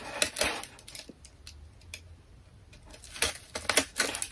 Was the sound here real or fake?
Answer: real